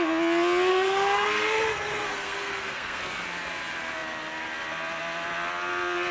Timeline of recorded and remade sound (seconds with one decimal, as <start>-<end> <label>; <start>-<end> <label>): 0.0-0.7 recorded; 0.7-3.0 remade; 3.0-6.1 recorded